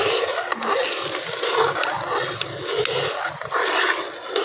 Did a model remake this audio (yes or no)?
no